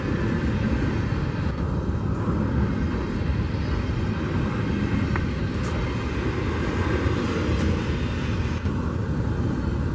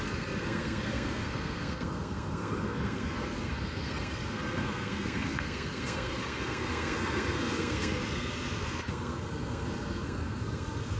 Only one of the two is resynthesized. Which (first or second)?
second